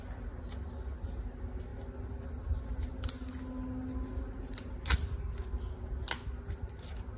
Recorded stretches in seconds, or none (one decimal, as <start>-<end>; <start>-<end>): 0.0-7.2